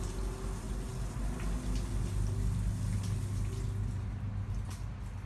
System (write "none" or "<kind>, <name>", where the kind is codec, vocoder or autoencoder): none